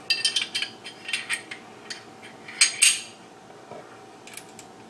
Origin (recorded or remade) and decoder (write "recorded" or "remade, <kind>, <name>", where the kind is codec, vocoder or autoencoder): recorded